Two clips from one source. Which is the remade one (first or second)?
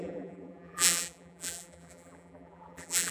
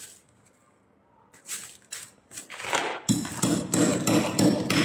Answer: first